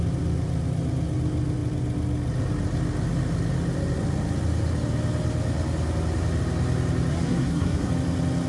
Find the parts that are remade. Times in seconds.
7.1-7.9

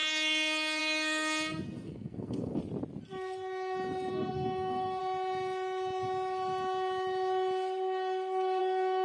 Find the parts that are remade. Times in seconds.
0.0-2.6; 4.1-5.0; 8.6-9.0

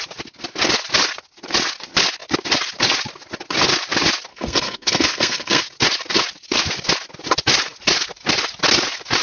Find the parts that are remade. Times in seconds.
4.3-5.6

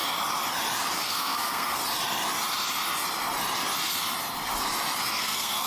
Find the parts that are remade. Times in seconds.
1.1-1.8; 5.2-5.7